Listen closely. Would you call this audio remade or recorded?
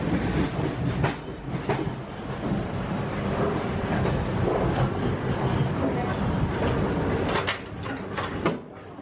recorded